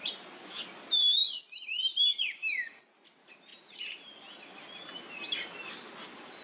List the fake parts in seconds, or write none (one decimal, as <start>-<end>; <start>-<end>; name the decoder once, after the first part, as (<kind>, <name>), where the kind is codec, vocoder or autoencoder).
3.5-4.1 (vocoder, BigVGAN v2)